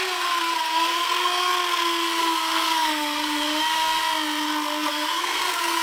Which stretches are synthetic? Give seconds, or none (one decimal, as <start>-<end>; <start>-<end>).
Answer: 0.0-1.5; 2.2-4.0; 4.9-5.8